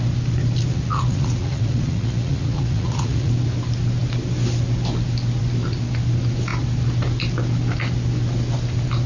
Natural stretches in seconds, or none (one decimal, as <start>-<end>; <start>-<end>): 0.0-0.7; 3.3-9.1